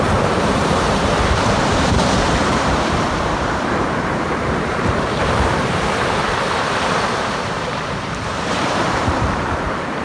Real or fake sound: fake